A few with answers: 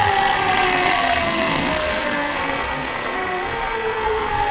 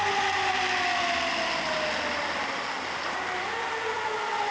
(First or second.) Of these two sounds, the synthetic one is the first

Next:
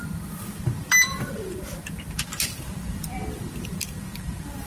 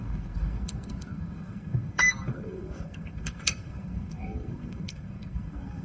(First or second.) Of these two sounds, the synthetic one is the second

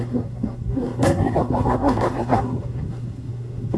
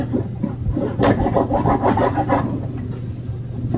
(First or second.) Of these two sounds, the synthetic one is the first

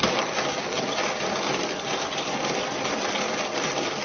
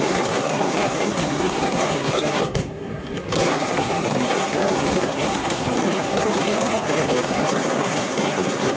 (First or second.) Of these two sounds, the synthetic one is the second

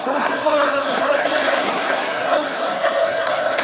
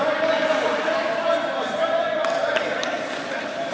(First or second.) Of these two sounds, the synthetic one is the first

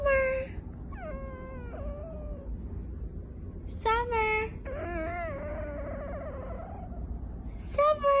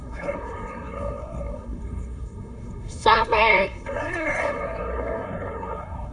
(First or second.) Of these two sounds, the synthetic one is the second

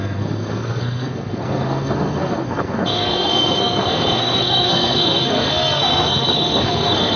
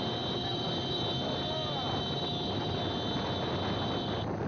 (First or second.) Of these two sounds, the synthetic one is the first